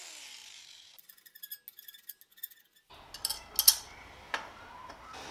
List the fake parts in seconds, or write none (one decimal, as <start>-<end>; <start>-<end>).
none